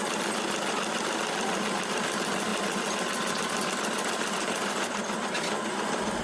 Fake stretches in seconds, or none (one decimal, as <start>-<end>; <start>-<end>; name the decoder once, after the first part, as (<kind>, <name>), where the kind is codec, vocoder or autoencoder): none